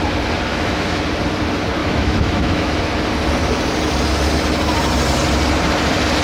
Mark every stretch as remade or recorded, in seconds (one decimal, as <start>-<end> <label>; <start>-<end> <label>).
0.0-0.5 recorded; 0.5-1.0 remade; 1.0-1.8 recorded; 1.8-2.7 remade; 2.7-6.2 recorded